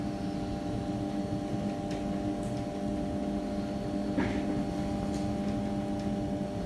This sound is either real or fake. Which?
real